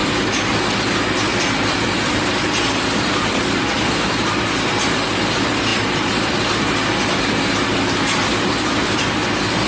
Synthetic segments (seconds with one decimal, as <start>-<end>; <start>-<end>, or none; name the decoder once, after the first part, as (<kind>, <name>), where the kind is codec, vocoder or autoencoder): none